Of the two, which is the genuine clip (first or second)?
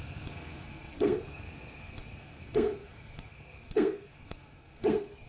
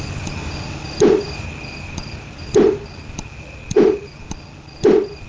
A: second